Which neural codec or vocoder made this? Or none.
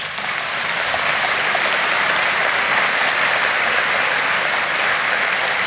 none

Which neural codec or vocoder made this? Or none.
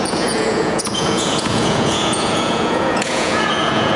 vocoder, Vocos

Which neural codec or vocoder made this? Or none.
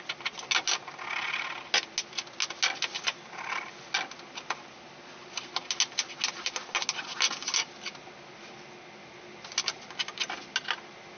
none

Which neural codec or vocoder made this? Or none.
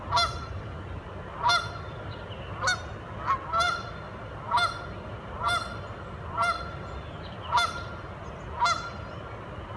none